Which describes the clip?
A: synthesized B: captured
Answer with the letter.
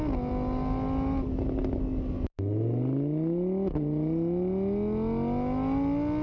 B